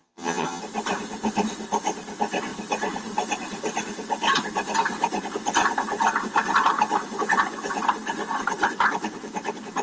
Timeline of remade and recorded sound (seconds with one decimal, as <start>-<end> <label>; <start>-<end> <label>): 0.0-0.6 remade; 0.6-9.8 recorded